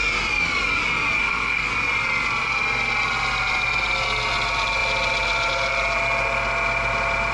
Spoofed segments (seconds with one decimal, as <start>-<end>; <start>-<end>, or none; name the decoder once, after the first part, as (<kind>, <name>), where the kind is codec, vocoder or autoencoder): 1.2-1.7 (codec, SNAC)